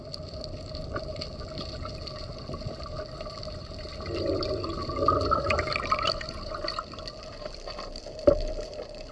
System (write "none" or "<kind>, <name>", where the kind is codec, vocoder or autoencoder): vocoder, BigVGAN v2